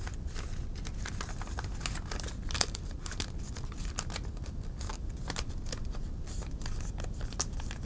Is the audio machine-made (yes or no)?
no